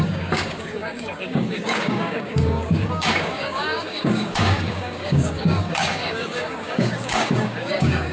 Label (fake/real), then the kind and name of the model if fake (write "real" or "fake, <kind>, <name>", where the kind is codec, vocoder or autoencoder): fake, codec, DAC